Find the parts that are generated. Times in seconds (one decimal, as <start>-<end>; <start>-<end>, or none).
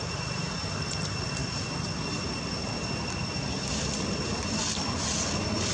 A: none